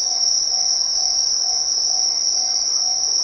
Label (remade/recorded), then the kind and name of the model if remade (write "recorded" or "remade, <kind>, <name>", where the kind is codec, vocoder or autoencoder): recorded